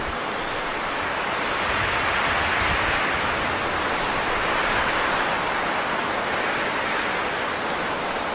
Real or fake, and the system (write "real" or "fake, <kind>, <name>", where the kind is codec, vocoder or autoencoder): real